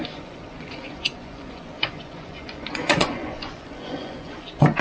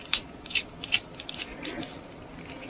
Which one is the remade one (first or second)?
first